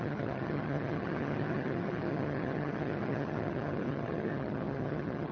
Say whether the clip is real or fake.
fake